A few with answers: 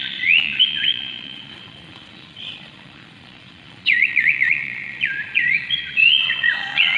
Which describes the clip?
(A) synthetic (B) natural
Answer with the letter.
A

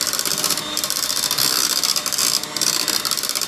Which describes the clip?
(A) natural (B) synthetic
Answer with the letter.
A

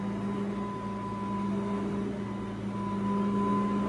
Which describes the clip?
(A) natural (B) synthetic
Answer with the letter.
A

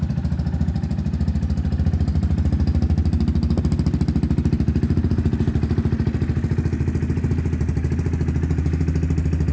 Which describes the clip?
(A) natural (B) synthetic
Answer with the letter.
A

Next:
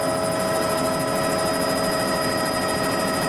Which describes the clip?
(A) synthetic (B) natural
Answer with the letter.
B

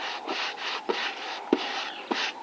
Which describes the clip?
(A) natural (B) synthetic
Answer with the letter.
A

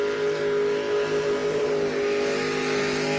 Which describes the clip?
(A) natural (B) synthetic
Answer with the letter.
A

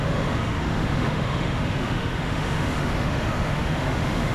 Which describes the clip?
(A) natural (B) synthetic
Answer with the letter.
B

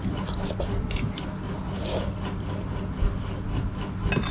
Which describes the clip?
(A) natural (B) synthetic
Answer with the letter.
A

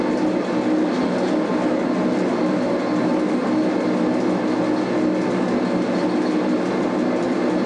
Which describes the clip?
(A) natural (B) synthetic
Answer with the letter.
A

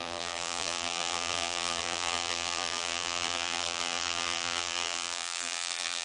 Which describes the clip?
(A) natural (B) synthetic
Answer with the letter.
B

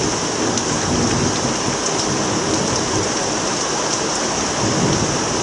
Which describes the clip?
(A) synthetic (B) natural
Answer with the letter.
B